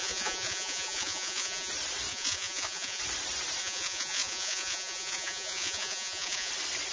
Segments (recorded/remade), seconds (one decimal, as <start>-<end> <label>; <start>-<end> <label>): 0.0-1.7 remade; 1.7-2.1 recorded; 2.1-3.0 remade; 3.0-3.6 recorded; 3.6-6.5 remade; 6.5-6.9 recorded